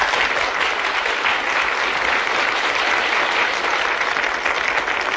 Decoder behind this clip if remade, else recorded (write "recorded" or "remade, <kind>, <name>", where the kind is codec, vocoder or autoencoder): recorded